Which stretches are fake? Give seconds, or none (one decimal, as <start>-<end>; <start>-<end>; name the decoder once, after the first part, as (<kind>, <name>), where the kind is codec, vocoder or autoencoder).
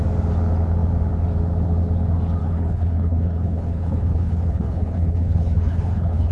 2.4-6.3 (codec, HILCodec)